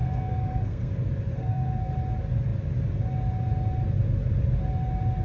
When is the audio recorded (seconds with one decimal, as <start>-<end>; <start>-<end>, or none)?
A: 0.9-1.4; 1.9-5.2